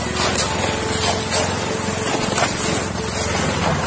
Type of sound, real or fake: real